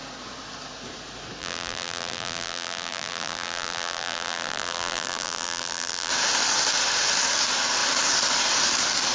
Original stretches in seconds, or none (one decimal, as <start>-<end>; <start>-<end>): 0.0-1.4; 6.1-9.1